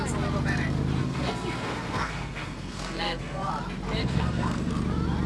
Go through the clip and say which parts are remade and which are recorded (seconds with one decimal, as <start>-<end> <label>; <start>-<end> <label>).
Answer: 0.0-1.0 recorded; 1.0-3.5 remade; 3.5-4.0 recorded; 4.0-4.7 remade; 4.7-5.3 recorded